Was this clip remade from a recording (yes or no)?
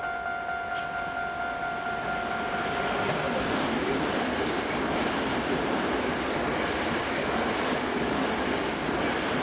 no